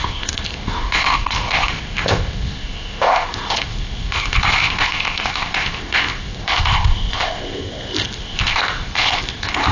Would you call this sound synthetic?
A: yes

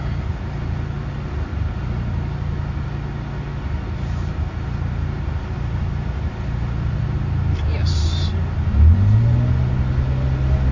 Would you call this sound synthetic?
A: no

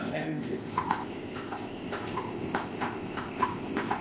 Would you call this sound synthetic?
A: yes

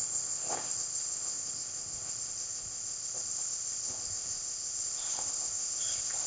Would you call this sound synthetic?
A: yes